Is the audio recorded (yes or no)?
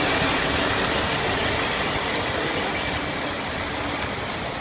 yes